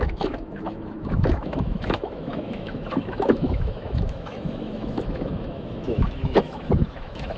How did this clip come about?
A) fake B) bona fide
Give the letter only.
A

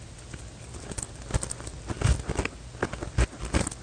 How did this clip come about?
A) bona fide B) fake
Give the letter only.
A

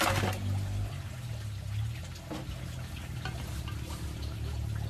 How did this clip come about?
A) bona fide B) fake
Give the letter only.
A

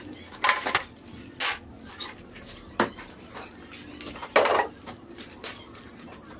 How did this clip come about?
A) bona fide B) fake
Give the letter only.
A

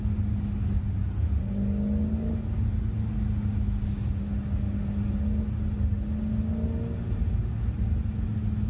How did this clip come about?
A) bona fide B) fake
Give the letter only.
A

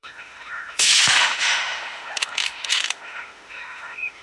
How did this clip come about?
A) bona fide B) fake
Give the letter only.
B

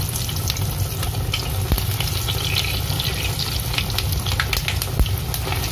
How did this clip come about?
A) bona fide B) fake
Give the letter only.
A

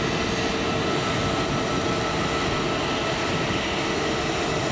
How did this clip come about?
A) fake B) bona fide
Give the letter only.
B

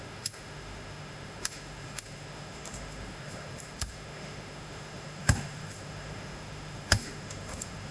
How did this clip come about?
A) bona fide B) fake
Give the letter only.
B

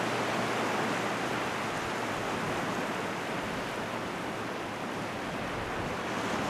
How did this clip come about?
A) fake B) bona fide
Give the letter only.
B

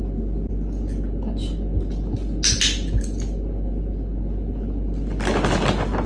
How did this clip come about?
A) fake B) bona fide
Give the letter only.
B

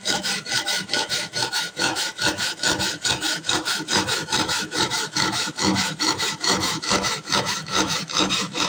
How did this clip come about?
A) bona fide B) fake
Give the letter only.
B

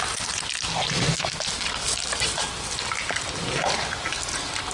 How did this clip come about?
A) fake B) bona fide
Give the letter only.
B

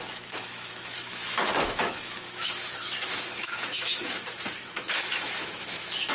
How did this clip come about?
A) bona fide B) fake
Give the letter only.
B